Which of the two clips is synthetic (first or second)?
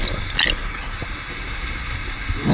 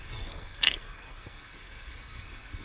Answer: second